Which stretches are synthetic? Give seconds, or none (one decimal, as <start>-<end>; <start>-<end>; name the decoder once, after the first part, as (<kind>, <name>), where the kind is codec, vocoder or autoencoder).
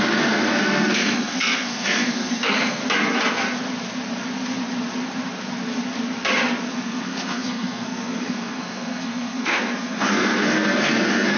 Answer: 0.0-2.8 (codec, SNAC); 6.7-11.4